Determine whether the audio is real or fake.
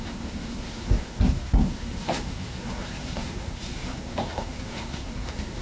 fake